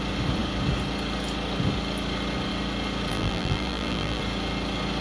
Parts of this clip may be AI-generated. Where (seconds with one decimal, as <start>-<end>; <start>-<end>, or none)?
3.1-4.2